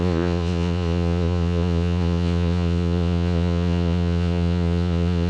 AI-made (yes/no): yes